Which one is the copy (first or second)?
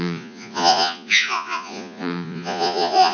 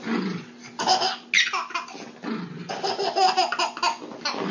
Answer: first